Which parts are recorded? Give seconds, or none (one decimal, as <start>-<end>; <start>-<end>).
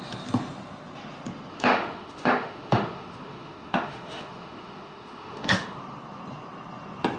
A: 0.0-1.5; 5.8-7.2